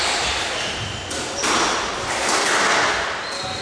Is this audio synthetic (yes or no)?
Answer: no